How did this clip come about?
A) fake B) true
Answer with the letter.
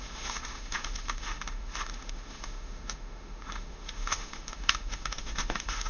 A